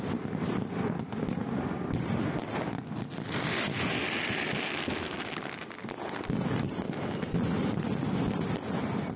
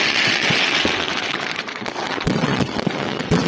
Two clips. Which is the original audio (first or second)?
first